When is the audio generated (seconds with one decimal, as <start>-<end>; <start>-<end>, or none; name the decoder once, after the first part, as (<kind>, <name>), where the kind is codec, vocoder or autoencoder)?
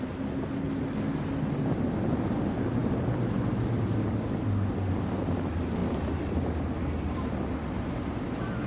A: 5.8-8.1 (vocoder, BigVGAN v2)